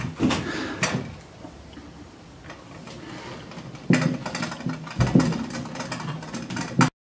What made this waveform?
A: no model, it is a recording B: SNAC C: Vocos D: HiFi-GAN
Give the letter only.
A